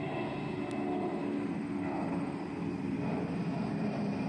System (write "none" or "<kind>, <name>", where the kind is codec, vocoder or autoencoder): none